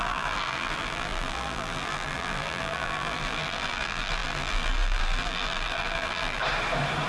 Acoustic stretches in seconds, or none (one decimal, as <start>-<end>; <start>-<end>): 6.4-7.1